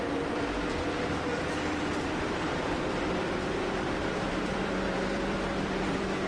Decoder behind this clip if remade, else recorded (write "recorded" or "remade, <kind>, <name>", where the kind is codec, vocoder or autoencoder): remade, vocoder, BigVGAN v2